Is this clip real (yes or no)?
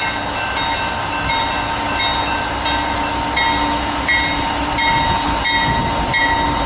yes